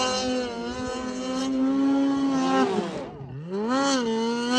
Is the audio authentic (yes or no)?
yes